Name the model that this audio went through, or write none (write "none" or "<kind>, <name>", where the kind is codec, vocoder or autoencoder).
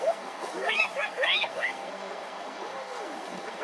codec, SNAC